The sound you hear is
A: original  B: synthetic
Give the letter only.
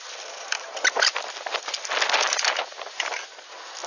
A